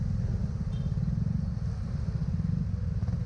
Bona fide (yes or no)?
yes